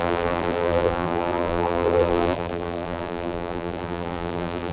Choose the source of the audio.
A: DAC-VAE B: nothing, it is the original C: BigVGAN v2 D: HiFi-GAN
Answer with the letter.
C